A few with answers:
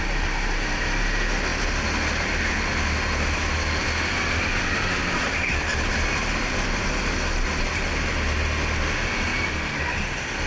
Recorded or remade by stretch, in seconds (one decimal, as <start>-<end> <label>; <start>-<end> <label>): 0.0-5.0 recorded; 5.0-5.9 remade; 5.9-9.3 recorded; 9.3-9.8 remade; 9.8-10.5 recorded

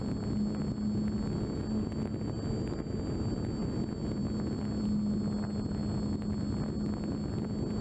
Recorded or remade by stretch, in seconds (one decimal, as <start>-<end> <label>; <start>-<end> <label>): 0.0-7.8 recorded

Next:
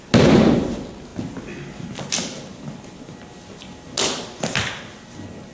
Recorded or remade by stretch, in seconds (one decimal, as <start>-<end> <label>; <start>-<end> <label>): 0.0-5.5 recorded

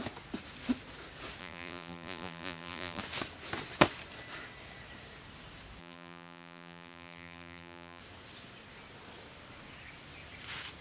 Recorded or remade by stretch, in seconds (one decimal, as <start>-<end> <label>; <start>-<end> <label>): 0.0-1.4 recorded; 1.4-3.0 remade; 3.0-5.8 recorded; 5.8-8.0 remade; 8.0-10.8 recorded